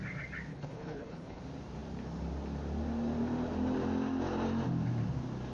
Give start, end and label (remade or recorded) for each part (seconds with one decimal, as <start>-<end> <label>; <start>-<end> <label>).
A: 0.0-0.5 recorded; 0.5-1.4 remade; 1.4-5.5 recorded